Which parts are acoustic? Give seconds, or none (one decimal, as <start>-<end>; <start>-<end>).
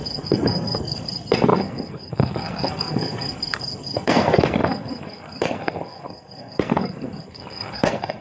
none